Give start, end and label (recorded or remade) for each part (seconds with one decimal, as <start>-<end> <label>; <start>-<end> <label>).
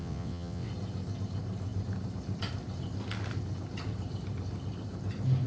0.0-0.7 remade; 0.7-5.5 recorded